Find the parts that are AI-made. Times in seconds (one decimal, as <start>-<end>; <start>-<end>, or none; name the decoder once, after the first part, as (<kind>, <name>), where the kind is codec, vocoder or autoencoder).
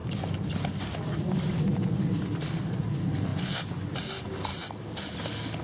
none